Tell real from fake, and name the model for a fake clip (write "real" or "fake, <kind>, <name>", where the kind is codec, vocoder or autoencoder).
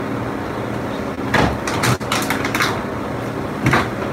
real